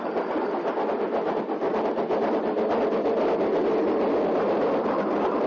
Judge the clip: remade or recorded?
recorded